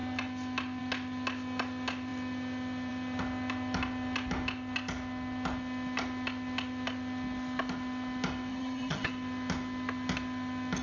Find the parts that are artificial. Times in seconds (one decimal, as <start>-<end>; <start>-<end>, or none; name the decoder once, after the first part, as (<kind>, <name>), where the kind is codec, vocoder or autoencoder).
8.5-9.1 (vocoder, HiFi-GAN)